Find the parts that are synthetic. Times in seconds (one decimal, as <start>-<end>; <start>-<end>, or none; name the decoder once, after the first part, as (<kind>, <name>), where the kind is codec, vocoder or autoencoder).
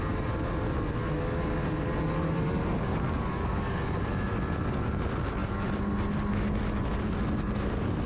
none